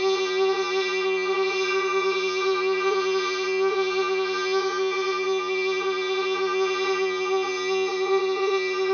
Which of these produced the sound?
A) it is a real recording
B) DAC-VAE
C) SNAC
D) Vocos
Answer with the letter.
D